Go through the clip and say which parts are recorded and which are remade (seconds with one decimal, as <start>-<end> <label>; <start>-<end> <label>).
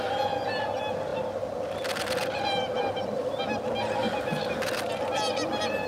0.0-5.9 recorded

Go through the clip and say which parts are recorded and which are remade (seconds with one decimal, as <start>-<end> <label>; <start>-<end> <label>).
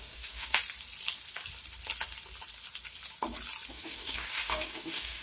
0.0-0.6 remade; 0.6-3.7 recorded; 3.7-5.2 remade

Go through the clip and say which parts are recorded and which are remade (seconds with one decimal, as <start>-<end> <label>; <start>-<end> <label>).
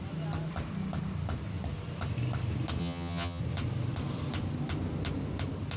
0.0-2.8 recorded; 2.8-3.4 remade; 3.4-5.8 recorded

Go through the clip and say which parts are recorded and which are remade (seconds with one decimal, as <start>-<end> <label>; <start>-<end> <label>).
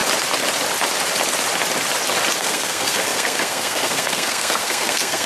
0.0-2.4 recorded; 2.4-5.3 remade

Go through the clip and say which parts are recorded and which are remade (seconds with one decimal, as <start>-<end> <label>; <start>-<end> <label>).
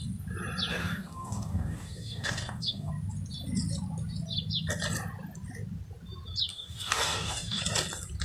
0.0-0.7 recorded; 0.7-2.9 remade; 2.9-6.5 recorded; 6.5-7.6 remade; 7.6-8.2 recorded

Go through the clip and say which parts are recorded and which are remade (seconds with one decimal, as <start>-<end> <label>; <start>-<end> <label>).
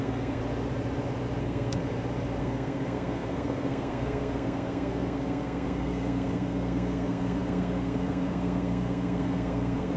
0.0-0.4 remade; 0.4-1.4 recorded; 1.4-1.8 remade; 1.8-2.4 recorded; 2.4-10.0 remade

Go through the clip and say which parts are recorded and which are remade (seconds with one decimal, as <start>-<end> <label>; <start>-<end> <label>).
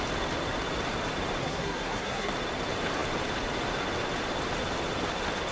0.0-1.4 recorded; 1.4-2.3 remade; 2.3-5.5 recorded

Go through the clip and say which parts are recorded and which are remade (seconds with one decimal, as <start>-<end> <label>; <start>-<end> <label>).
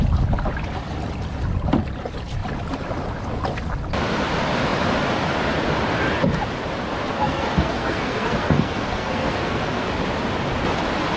0.0-7.1 recorded; 7.1-9.9 remade; 9.9-11.2 recorded